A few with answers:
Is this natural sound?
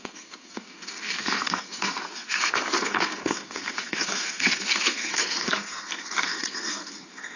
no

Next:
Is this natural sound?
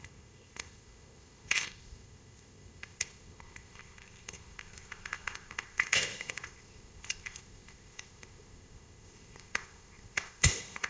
no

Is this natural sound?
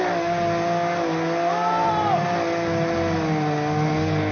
yes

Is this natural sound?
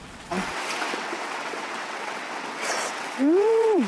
no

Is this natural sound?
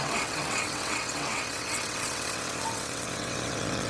no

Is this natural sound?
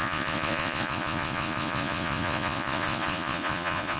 no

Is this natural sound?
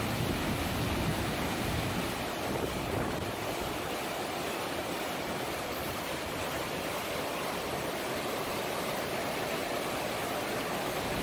no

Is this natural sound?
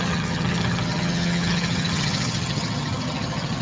no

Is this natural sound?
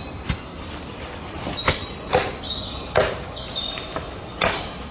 yes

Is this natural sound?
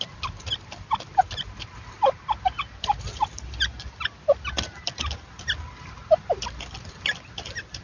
yes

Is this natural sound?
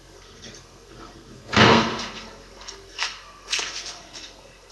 no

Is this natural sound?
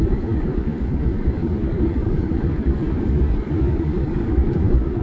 no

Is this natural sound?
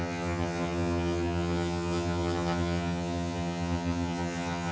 no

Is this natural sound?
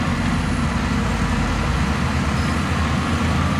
yes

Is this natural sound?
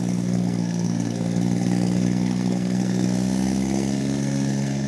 no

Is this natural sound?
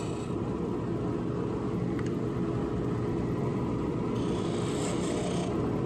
yes